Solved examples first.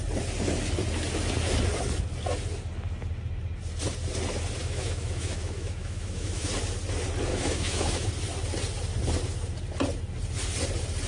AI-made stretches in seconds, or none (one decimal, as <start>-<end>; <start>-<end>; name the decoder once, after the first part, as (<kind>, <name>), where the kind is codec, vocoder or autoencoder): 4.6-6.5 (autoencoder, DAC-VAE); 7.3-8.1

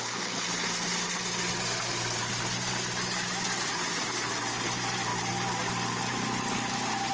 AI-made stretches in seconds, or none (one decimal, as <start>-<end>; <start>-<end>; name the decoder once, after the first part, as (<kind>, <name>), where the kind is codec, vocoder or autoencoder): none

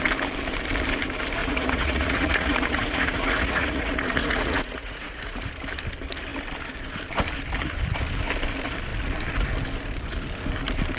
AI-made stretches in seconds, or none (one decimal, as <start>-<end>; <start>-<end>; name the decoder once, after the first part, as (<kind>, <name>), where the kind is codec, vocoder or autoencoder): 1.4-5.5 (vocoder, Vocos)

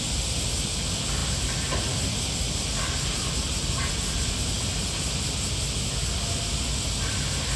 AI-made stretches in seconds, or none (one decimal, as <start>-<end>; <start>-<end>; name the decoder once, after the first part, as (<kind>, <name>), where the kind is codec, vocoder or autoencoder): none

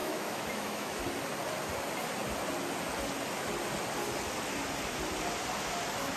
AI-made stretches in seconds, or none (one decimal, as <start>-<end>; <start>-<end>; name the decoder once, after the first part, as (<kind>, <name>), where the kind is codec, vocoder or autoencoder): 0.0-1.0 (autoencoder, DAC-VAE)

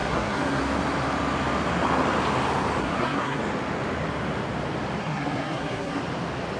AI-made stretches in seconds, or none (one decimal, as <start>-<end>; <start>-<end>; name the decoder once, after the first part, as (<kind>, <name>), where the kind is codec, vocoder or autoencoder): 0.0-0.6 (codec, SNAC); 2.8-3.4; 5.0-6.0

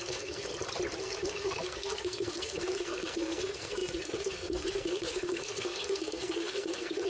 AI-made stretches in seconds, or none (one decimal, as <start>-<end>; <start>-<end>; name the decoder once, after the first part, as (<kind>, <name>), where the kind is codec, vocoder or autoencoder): 0.0-0.5 (codec, SNAC); 1.0-7.1

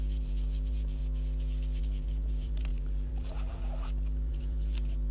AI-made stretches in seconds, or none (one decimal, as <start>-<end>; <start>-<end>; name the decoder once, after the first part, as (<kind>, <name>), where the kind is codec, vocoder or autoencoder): 0.0-1.0 (vocoder, BigVGAN v2); 1.8-5.1